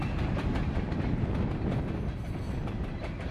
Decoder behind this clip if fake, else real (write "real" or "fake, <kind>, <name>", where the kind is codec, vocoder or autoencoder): real